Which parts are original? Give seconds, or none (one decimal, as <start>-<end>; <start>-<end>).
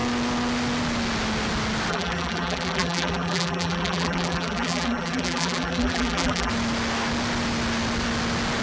0.0-1.9; 6.5-8.6